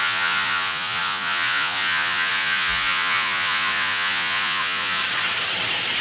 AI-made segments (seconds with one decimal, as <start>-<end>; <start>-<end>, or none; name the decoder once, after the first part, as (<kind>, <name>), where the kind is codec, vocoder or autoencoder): 0.0-5.0 (vocoder, Vocos)